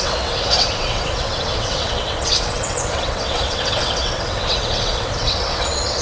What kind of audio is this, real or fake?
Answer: fake